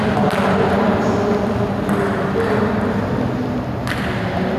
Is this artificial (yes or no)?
no